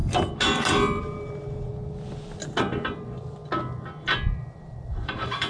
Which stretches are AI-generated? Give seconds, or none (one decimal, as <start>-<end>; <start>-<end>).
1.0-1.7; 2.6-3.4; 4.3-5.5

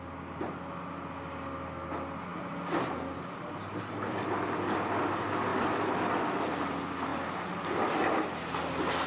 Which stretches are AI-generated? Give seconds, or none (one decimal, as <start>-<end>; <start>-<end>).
2.3-2.9; 5.5-6.0

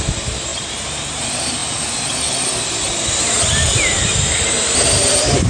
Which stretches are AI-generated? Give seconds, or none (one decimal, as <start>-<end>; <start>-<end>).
0.0-0.5; 1.1-1.6; 3.0-5.5

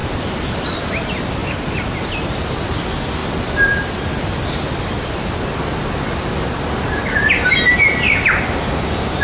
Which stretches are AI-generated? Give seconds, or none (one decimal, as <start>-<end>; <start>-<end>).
0.0-0.8; 1.4-2.1; 3.2-4.0